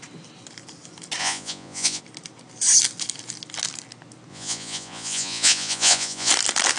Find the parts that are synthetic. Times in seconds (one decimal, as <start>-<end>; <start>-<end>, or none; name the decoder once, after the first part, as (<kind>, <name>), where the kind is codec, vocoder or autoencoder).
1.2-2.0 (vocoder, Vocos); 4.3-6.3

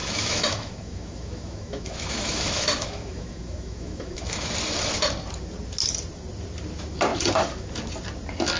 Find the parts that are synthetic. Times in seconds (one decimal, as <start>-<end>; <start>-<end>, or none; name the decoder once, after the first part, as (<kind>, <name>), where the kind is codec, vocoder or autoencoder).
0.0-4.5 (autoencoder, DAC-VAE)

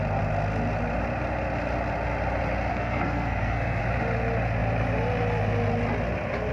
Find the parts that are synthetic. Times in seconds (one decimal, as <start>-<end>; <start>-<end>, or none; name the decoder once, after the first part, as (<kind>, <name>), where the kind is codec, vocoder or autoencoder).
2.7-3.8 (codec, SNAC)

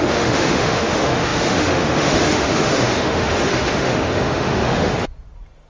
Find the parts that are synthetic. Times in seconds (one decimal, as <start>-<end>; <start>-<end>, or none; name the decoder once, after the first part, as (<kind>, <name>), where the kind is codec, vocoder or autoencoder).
0.0-4.9 (autoencoder, DAC-VAE)

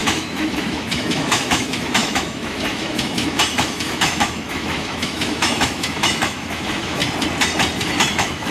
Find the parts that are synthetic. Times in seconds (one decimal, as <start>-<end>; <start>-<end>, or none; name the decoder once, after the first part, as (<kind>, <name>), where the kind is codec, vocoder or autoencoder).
0.0-7.0 (autoencoder, DAC-VAE); 8.1-8.5

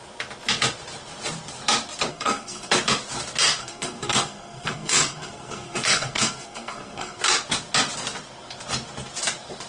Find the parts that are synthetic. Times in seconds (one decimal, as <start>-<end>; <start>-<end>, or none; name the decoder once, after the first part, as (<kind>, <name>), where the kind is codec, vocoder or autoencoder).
2.1-2.7 (codec, SNAC); 3.6-7.2

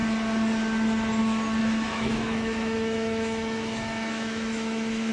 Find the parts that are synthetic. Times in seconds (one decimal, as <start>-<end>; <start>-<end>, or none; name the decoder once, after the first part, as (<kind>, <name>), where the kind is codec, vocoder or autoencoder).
1.6-5.1 (autoencoder, DAC-VAE)

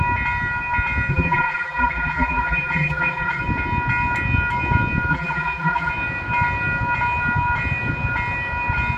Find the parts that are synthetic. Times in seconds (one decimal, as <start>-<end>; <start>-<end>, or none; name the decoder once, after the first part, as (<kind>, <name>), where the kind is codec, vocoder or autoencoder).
1.1-3.4 (vocoder, BigVGAN v2); 5.1-5.9